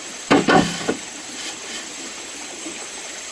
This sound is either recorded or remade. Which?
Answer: remade